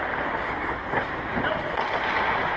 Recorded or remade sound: recorded